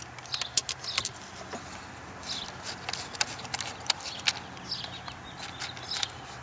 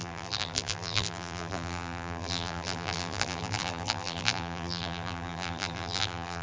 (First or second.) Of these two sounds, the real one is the first